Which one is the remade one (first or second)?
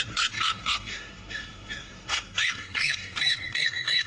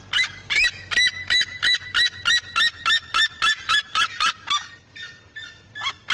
first